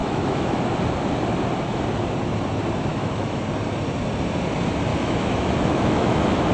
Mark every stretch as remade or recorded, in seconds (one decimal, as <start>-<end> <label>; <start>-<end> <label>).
0.0-0.6 remade; 0.6-2.9 recorded; 2.9-3.4 remade; 3.4-4.9 recorded; 4.9-6.5 remade